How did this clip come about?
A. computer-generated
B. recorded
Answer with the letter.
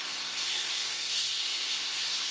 A